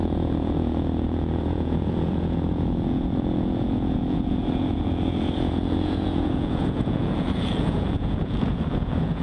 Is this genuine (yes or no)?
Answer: no